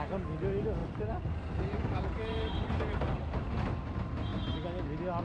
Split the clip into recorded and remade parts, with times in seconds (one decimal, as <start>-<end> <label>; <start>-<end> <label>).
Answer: 0.0-0.8 recorded; 0.8-3.9 remade; 3.9-5.2 recorded